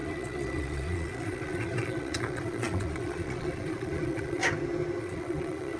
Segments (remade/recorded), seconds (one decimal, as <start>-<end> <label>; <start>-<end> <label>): 0.0-4.4 remade; 4.4-5.0 recorded; 5.0-5.8 remade

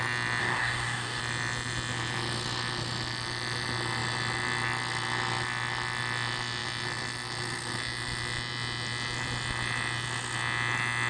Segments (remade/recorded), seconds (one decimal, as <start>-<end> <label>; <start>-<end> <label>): 0.0-0.4 recorded; 0.4-1.2 remade; 1.2-11.1 recorded

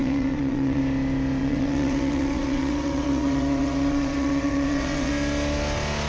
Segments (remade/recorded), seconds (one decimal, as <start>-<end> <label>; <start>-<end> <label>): 0.0-0.8 remade; 0.8-1.4 recorded; 1.4-5.1 remade; 5.1-6.1 recorded

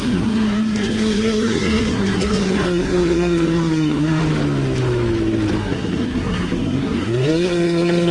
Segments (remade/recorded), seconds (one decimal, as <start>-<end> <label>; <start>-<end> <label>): 0.0-4.2 remade; 4.2-5.6 recorded; 5.6-8.1 remade

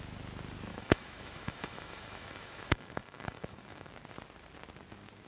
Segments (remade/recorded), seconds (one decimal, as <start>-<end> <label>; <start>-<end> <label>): 0.0-0.7 recorded; 0.7-3.9 remade; 3.9-5.3 recorded